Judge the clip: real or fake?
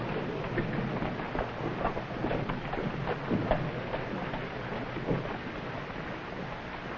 real